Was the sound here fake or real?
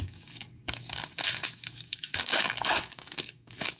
fake